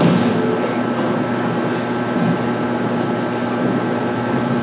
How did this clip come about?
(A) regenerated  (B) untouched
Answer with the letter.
B